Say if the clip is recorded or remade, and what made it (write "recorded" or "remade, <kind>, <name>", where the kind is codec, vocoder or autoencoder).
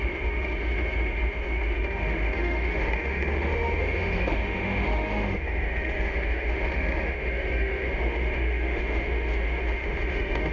remade, autoencoder, DAC-VAE